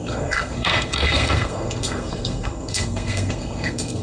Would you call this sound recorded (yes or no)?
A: no